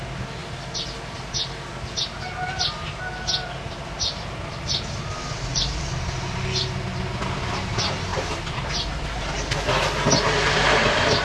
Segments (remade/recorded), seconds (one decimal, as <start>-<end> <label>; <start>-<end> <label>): 0.0-11.2 recorded